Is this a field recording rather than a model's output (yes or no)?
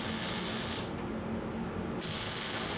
yes